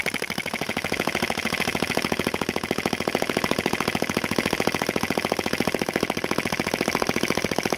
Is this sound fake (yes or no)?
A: yes